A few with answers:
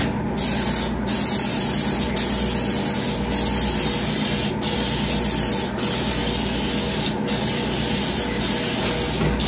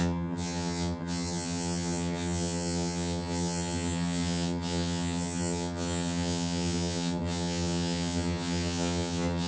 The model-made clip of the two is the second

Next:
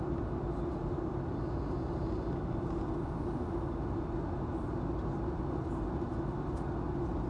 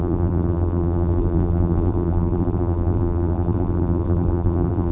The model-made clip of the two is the second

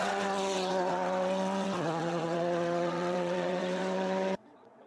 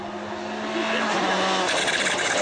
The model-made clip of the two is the first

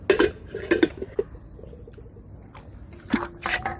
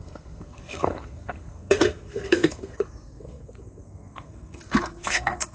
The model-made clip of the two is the second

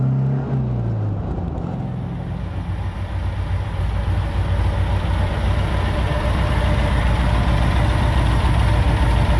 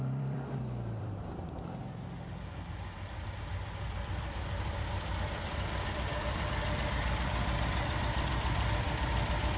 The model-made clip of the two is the second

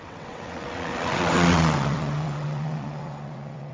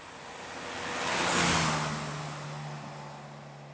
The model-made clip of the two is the first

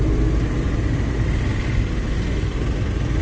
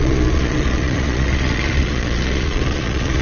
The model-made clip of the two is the second